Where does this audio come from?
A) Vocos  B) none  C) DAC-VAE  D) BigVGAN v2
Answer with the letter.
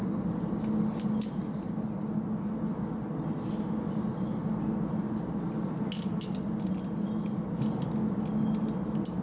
B